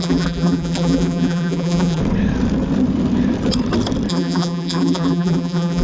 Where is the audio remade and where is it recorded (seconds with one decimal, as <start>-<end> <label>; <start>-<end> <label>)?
0.0-2.0 remade; 2.0-4.1 recorded; 4.1-5.8 remade